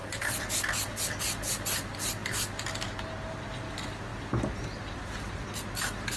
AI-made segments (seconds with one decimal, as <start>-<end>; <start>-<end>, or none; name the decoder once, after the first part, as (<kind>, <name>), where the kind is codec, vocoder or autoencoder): none